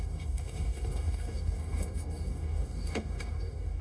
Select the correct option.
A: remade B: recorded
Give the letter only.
A